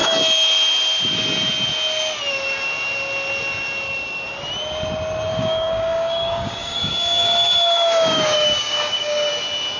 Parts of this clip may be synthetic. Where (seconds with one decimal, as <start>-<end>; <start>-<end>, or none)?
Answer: 5.3-9.3